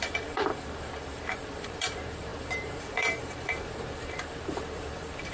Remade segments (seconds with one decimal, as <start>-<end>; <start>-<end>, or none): 0.0-5.3